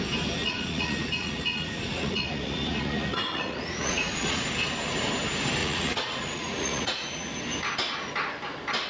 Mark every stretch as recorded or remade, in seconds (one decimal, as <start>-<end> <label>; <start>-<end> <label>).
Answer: 0.0-0.4 recorded; 0.4-4.4 remade; 4.4-5.6 recorded; 5.6-7.4 remade; 7.4-8.9 recorded